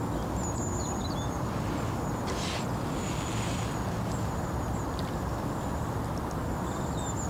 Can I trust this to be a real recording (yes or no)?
yes